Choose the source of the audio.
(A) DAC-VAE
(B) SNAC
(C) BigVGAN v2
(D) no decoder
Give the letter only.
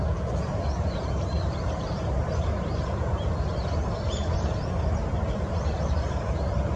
C